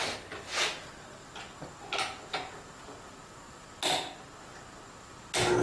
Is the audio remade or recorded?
recorded